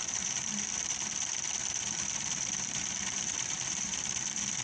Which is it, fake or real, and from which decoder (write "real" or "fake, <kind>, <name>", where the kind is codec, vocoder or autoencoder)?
fake, vocoder, BigVGAN v2